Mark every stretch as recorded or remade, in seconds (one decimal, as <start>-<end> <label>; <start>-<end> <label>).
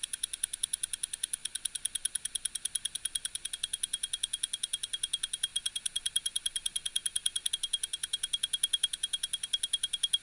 0.0-10.2 recorded